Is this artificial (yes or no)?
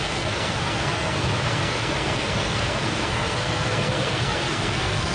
yes